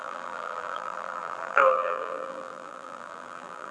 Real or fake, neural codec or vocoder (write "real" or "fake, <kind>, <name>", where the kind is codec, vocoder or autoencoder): fake, vocoder, BigVGAN v2